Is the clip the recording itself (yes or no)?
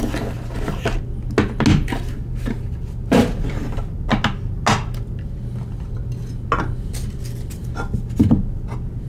yes